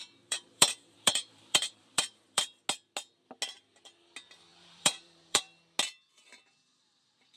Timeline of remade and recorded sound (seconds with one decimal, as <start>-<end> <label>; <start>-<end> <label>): 0.0-2.6 remade; 2.6-4.5 recorded; 4.5-5.4 remade; 5.4-7.4 recorded